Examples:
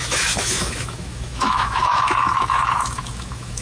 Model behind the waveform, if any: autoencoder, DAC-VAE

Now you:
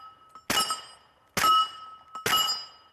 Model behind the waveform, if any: none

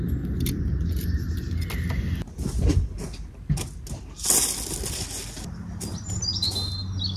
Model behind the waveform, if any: none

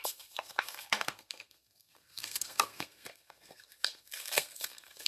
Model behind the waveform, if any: codec, SNAC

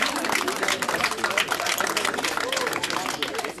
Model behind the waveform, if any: none